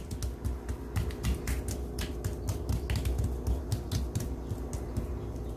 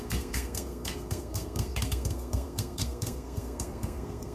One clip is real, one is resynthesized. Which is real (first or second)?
first